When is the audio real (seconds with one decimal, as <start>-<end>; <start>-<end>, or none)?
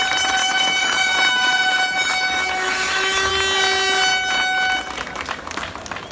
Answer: 0.0-0.4; 3.3-6.1